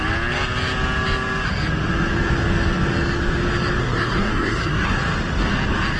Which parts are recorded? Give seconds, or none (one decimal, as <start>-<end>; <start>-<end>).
0.0-3.8; 5.0-6.0